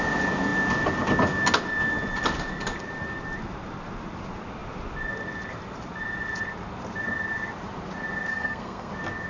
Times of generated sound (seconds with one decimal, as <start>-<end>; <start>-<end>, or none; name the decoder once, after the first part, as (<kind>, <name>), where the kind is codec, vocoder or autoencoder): 8.3-8.9 (codec, SNAC)